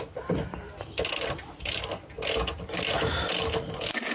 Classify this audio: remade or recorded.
recorded